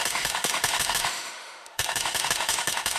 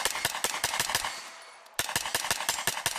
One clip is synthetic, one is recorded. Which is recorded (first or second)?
second